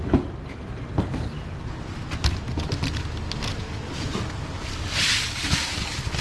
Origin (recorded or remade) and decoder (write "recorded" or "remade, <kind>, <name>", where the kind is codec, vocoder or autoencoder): recorded